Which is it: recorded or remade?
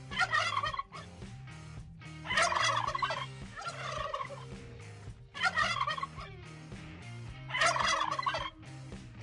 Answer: recorded